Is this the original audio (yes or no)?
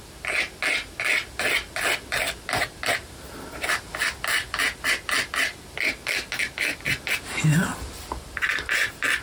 yes